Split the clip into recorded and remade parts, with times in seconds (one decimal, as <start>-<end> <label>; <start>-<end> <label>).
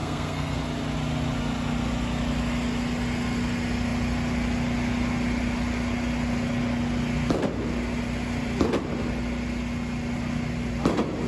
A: 0.0-0.6 remade; 0.6-11.3 recorded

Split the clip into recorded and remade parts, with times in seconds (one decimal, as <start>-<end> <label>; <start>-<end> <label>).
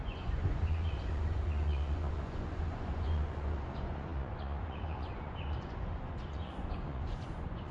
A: 0.0-7.7 remade